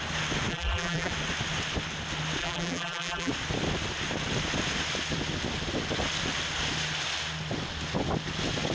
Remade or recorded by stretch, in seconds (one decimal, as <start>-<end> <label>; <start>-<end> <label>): 0.0-0.5 recorded; 0.5-1.1 remade; 1.1-2.4 recorded; 2.4-3.3 remade; 3.3-8.7 recorded